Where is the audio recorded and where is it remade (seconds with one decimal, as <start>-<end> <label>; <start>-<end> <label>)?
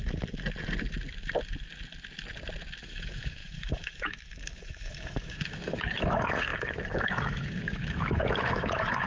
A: 0.0-2.8 recorded; 2.8-9.1 remade